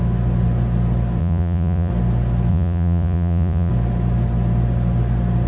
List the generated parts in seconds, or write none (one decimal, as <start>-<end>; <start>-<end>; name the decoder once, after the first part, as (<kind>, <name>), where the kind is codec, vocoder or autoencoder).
1.2-1.9 (vocoder, Vocos); 2.5-3.7